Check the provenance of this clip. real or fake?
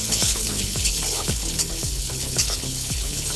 fake